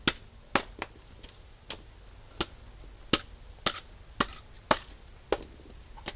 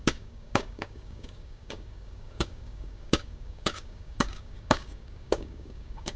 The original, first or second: first